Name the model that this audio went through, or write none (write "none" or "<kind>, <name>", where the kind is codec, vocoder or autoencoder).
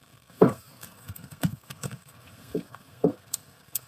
codec, SNAC